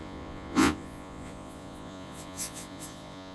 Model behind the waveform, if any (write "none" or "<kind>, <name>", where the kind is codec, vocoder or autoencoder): vocoder, Vocos